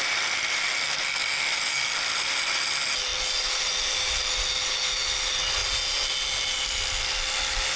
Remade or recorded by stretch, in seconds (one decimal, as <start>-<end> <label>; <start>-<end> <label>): 0.0-7.8 recorded